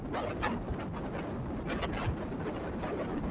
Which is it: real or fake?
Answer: real